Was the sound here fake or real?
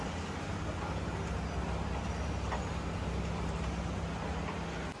real